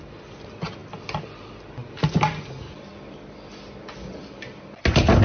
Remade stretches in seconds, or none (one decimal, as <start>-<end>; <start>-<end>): none

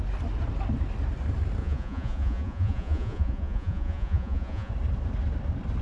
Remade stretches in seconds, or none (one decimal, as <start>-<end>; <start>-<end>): 1.6-4.7

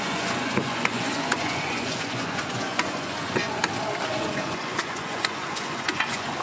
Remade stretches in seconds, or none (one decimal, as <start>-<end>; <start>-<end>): 0.0-3.6; 4.1-6.4

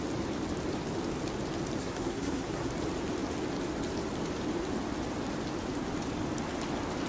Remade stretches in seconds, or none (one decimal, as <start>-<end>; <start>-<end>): 1.8-2.7

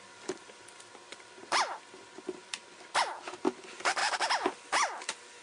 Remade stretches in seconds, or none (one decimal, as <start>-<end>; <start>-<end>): 0.0-4.0; 5.0-5.4

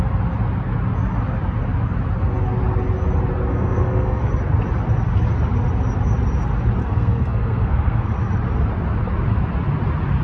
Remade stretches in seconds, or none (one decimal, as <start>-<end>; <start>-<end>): 3.5-4.3; 6.8-8.1

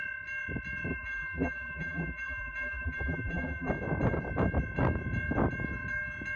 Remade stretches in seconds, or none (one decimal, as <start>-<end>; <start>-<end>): 0.9-3.7